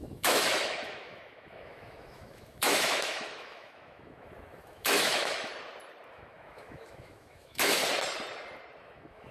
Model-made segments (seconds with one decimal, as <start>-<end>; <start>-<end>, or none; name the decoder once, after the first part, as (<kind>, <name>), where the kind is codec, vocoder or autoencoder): 0.0-5.5 (autoencoder, DAC-VAE); 6.1-7.8; 8.8-9.3